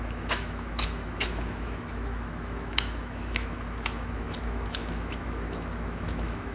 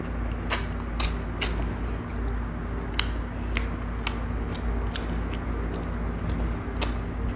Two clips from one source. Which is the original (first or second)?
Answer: second